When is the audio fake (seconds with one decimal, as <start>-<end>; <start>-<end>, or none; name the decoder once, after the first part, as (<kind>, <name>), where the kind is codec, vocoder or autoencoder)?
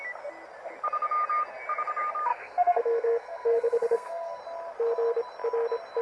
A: 2.3-4.4 (codec, SNAC)